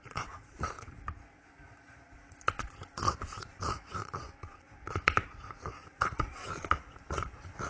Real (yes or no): no